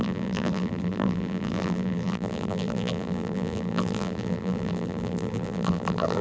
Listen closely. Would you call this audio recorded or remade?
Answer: remade